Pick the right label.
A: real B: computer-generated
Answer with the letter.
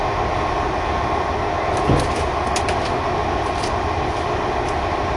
A